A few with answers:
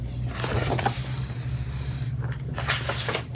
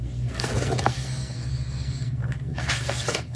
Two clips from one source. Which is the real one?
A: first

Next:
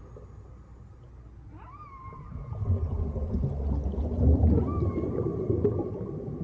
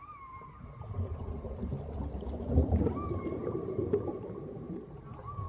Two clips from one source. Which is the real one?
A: first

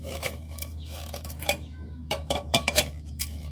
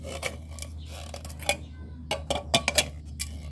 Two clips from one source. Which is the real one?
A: second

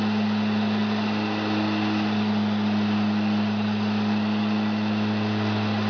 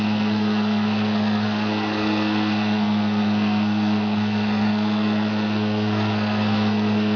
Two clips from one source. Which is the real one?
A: first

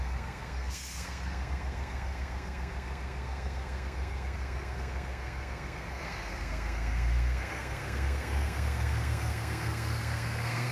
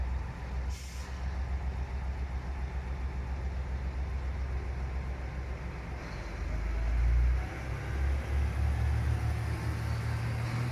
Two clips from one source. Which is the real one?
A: second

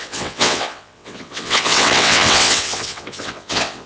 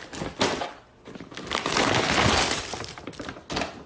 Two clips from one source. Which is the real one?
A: second